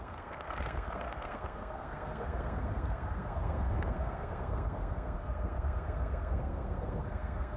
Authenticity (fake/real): fake